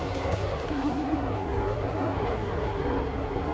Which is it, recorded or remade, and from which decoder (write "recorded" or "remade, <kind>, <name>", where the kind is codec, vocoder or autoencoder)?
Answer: remade, codec, SNAC